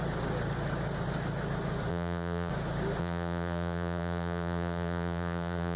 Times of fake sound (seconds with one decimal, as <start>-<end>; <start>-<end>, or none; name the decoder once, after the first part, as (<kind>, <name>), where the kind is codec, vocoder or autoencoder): 1.9-2.5 (vocoder, BigVGAN v2); 3.0-5.8